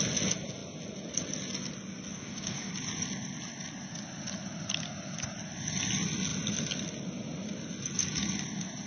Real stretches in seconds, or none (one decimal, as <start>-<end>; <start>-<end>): 0.0-2.1; 2.7-8.9